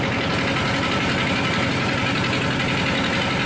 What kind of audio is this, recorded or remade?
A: recorded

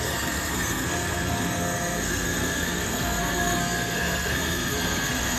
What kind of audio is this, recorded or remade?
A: remade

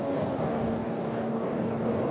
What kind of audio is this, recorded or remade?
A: remade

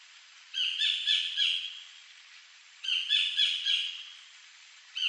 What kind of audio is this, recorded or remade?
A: remade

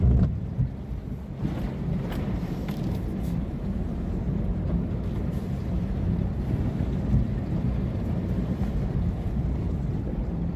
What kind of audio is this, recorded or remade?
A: recorded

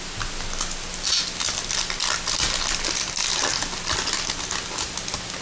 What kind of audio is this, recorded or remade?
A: recorded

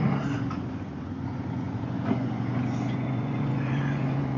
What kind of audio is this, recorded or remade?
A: remade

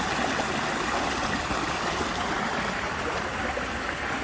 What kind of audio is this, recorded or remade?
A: recorded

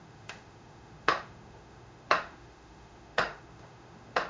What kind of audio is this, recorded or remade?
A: remade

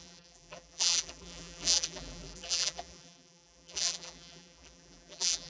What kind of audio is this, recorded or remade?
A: remade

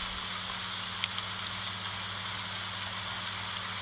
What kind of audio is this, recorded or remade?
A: recorded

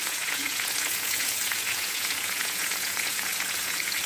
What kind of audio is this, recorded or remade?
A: remade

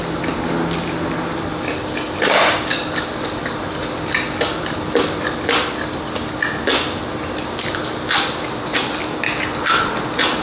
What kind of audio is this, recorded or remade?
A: recorded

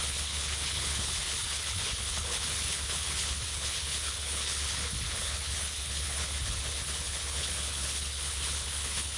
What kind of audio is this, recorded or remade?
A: remade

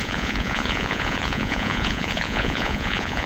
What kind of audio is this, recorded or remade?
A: remade